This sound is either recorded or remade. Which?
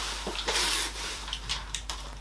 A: remade